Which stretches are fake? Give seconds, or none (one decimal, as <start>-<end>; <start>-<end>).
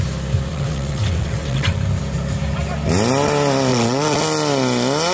0.5-1.8; 3.7-4.2